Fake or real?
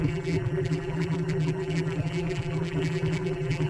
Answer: fake